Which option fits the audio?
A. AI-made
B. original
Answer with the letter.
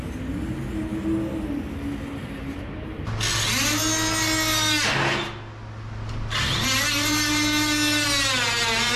B